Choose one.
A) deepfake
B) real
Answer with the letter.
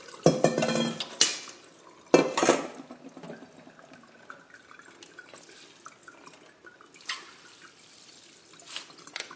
B